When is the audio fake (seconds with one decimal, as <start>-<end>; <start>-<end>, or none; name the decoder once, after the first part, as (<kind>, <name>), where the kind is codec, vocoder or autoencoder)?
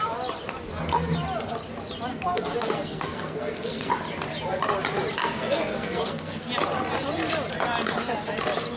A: 2.1-3.9 (codec, SNAC); 5.2-6.5